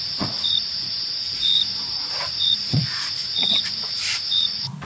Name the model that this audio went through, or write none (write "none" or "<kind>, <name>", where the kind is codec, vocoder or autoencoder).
vocoder, Vocos